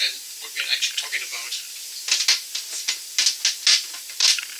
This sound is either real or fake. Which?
real